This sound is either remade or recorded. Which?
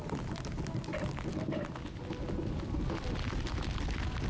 recorded